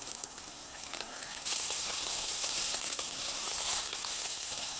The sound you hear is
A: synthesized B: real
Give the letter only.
A